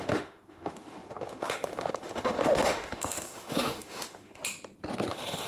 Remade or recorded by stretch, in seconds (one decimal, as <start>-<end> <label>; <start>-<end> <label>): 0.0-4.4 remade; 4.4-5.1 recorded; 5.1-5.5 remade